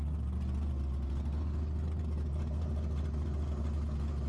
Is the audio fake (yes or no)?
no